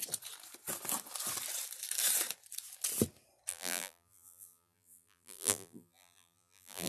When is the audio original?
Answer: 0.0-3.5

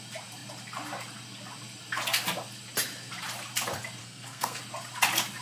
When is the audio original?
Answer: 0.0-4.0; 4.6-5.4

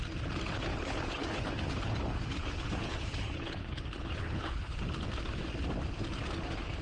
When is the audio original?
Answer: 0.0-0.7; 4.8-6.8

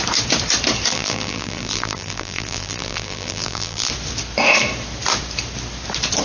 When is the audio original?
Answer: 0.0-0.9; 3.9-6.2

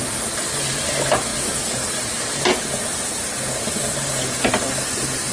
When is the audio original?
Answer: 0.0-5.3

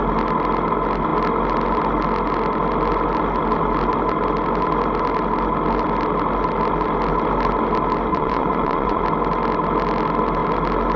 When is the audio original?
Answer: 0.0-8.1; 9.0-11.0

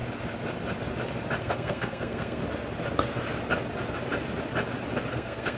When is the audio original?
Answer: 0.0-1.4; 2.4-5.1

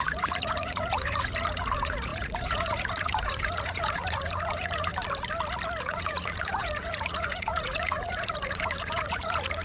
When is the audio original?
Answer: 4.9-5.8